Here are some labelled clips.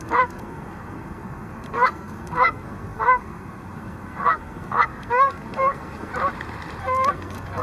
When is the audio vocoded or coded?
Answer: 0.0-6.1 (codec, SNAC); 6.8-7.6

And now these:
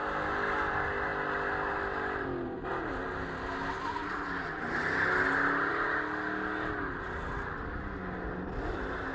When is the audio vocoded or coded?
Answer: none